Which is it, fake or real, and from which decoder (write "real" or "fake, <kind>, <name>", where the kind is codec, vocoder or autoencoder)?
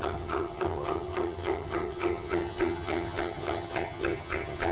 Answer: fake, vocoder, HiFi-GAN